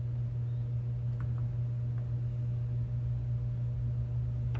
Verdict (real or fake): real